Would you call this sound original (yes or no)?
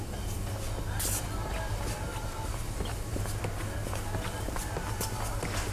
yes